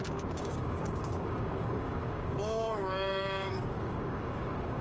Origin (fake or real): fake